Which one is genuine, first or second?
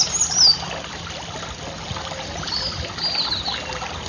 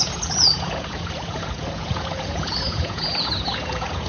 first